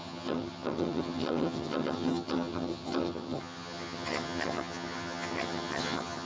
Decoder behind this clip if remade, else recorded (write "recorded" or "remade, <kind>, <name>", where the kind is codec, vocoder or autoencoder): remade, vocoder, HiFi-GAN